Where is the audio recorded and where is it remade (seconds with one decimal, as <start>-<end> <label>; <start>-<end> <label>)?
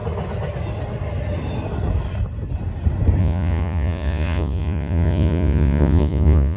0.0-3.2 recorded; 3.2-6.6 remade